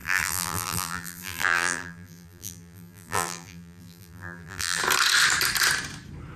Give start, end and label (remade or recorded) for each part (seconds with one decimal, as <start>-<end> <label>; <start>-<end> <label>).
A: 0.0-4.8 remade; 4.8-6.4 recorded